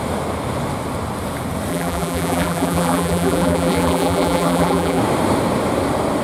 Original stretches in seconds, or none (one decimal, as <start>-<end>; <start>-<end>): 0.0-1.7; 5.0-6.2